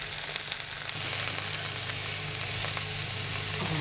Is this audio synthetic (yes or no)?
no